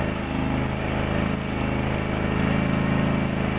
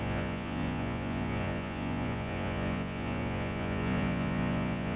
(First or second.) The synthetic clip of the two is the second